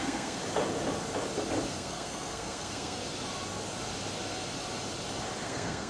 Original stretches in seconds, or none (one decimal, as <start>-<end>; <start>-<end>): 0.4-1.7; 3.0-5.4